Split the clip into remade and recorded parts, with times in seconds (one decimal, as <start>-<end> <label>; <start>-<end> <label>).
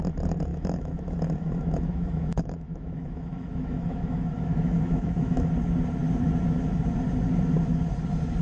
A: 0.0-0.5 recorded; 0.5-5.5 remade; 5.5-8.4 recorded